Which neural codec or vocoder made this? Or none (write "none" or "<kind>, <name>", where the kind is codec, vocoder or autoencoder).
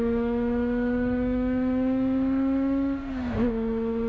autoencoder, DAC-VAE